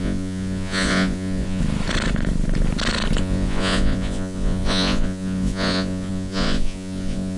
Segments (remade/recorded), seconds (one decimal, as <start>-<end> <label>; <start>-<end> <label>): 0.0-1.6 remade; 1.6-3.2 recorded; 3.2-7.4 remade